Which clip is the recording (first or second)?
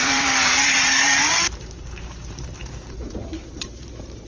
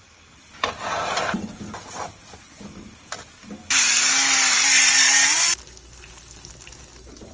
second